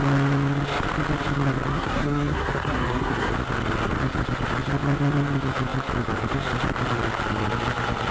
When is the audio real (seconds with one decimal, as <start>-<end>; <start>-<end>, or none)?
0.0-1.7; 3.3-8.1